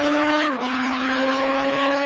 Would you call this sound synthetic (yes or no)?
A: yes